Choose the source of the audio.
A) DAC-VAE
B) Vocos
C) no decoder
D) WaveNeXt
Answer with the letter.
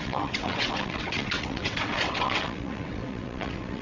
D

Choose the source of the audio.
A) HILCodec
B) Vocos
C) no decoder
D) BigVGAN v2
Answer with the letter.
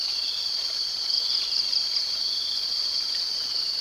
D